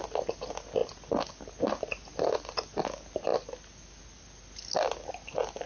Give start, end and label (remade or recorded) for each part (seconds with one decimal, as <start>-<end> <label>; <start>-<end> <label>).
0.0-5.7 recorded